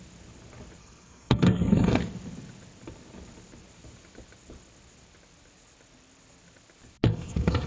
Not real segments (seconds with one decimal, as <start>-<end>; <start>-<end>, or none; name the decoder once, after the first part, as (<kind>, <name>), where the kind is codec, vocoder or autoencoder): 0.8-2.0 (codec, SNAC); 7.1-7.7